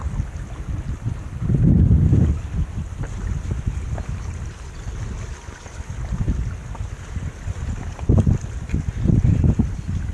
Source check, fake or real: real